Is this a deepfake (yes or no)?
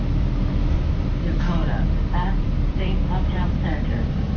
yes